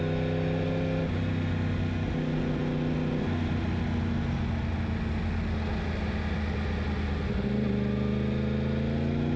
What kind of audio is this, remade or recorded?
recorded